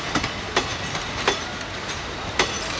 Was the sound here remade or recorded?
recorded